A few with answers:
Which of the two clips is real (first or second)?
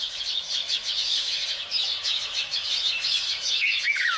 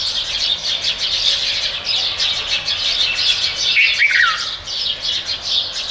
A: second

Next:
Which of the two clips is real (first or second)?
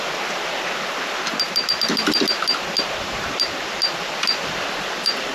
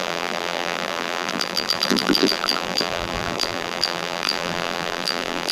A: first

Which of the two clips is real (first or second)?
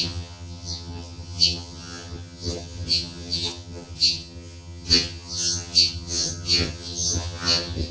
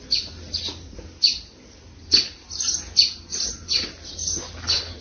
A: second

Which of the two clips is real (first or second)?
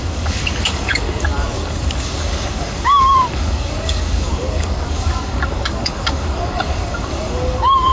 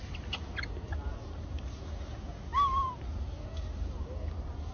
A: second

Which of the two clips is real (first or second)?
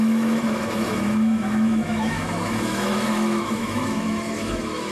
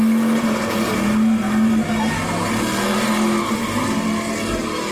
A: second